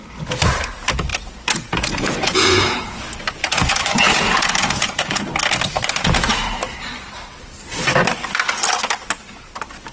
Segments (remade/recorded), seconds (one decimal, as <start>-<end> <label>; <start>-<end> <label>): 0.0-1.1 recorded; 1.1-2.8 remade; 2.8-3.4 recorded; 3.4-5.2 remade; 5.2-9.9 recorded

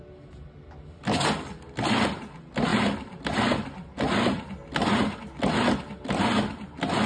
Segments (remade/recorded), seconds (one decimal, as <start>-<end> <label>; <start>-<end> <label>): 0.0-7.1 recorded